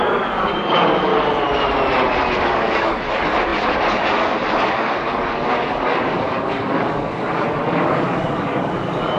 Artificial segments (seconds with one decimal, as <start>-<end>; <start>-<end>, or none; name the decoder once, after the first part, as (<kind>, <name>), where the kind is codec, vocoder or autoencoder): 0.0-1.1 (codec, DAC); 2.4-9.2